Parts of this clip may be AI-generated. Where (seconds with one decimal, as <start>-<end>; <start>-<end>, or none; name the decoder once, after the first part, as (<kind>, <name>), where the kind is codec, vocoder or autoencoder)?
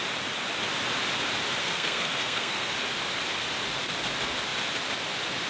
1.6-2.7 (codec, SNAC)